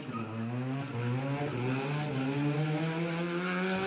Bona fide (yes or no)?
yes